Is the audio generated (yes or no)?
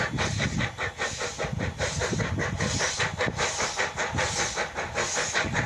no